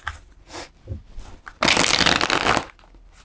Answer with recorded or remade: recorded